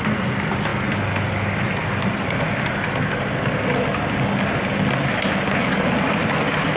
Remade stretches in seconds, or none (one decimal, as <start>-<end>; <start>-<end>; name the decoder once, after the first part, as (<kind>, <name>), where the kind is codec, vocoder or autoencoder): 5.6-6.3 (vocoder, BigVGAN v2)